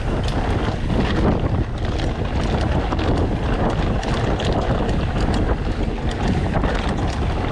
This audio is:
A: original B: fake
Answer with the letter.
A